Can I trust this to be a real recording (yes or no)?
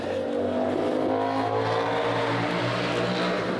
yes